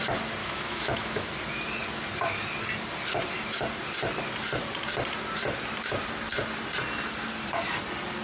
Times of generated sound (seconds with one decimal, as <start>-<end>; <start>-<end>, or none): 0.4-1.3